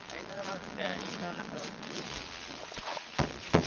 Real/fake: fake